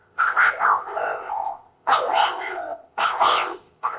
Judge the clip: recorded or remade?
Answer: remade